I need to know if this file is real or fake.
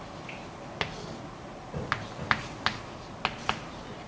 real